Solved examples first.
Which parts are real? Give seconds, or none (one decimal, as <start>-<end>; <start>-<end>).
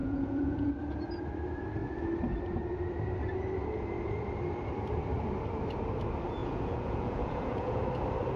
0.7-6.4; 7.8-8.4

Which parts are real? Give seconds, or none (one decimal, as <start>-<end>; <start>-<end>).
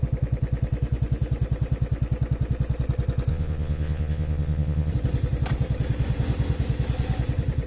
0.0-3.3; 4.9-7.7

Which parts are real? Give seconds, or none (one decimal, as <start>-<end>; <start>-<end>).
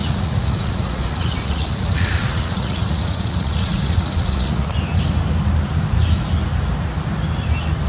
4.7-7.9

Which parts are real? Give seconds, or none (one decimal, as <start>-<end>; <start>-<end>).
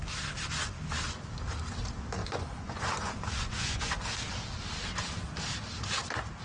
0.0-2.2; 3.9-6.4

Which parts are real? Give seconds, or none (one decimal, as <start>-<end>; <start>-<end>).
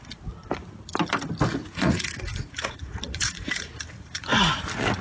0.0-1.6; 4.6-5.0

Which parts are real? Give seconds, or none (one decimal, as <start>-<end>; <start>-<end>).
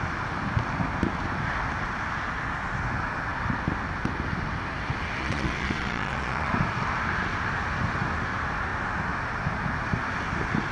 0.0-5.2; 6.5-10.7